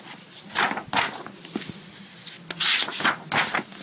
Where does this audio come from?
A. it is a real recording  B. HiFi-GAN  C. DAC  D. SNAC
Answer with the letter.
A